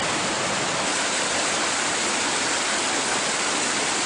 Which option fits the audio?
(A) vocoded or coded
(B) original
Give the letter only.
B